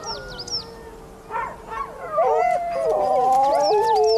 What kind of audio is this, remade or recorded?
recorded